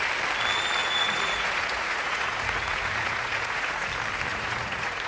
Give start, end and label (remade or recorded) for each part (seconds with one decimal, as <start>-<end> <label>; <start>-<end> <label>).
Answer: 0.0-0.8 recorded; 0.8-3.9 remade; 3.9-4.3 recorded; 4.3-5.1 remade

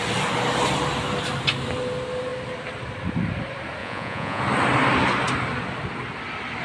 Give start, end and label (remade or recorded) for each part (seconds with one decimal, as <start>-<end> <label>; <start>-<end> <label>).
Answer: 0.0-3.8 recorded; 3.8-4.4 remade; 4.4-6.6 recorded